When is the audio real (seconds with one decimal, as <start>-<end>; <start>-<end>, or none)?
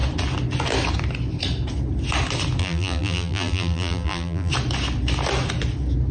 0.0-2.6; 4.5-6.1